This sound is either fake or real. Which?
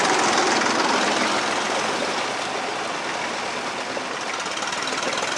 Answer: real